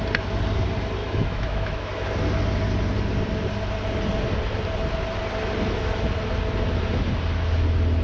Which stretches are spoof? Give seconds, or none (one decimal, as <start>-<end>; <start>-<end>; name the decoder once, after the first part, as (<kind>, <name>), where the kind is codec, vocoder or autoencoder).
1.0-2.0 (autoencoder, DAC-VAE)